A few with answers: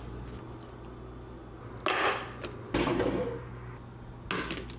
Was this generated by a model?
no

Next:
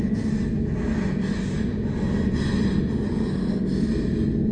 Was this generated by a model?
no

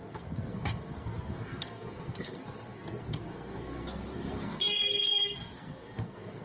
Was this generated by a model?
yes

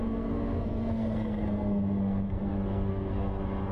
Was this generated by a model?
yes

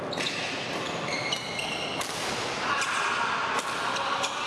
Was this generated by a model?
no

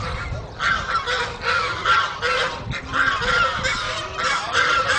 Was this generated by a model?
no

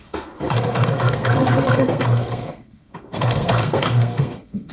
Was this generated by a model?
yes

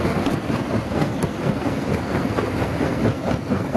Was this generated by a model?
yes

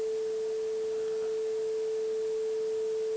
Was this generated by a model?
no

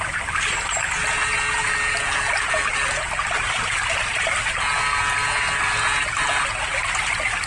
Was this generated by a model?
no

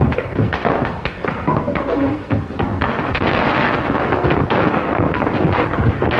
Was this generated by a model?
yes